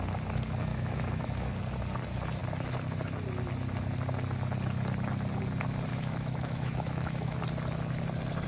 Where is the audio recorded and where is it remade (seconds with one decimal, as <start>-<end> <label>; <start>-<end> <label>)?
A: 0.0-0.7 recorded; 0.7-1.3 remade; 1.3-5.9 recorded; 5.9-7.4 remade; 7.4-8.5 recorded